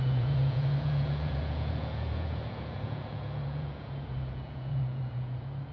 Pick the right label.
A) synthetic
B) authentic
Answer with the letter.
A